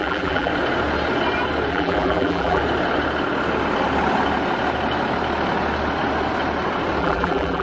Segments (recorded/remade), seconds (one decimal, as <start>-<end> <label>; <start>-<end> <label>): 0.0-0.5 remade; 0.5-1.7 recorded; 1.7-2.6 remade; 2.6-7.0 recorded; 7.0-7.6 remade